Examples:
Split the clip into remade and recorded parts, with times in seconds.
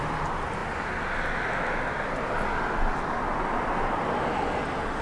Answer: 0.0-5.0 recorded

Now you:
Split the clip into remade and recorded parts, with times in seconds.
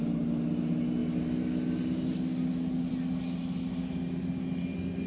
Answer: 0.0-5.1 recorded